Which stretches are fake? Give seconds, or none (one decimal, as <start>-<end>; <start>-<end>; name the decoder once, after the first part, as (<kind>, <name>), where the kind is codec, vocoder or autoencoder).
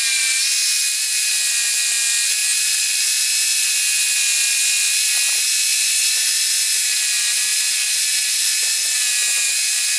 none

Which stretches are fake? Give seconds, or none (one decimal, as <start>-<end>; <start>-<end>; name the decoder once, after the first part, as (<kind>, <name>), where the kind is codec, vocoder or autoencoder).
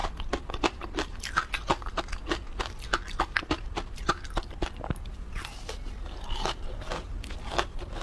none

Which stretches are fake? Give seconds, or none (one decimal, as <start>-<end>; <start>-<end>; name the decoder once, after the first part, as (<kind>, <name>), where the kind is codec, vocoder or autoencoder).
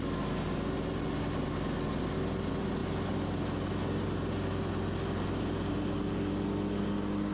none